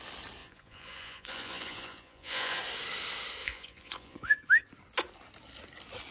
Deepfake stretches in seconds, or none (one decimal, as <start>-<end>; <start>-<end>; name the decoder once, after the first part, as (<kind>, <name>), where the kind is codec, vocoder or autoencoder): 0.4-2.6 (vocoder, Vocos); 3.4-4.5